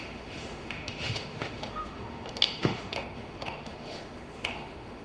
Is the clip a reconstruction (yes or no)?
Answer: yes